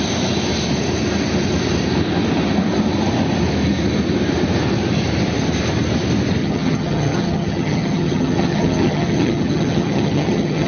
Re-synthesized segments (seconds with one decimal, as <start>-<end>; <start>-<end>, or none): 6.4-10.7